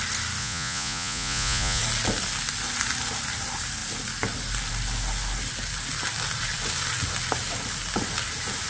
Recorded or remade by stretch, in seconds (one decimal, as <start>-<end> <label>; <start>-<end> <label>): 0.0-0.4 recorded; 0.4-1.8 remade; 1.8-8.7 recorded